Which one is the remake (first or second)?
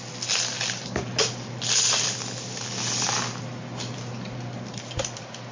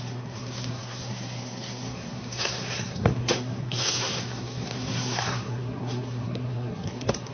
second